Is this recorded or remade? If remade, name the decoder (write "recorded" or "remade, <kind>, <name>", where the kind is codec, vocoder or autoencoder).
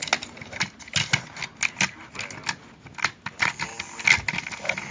recorded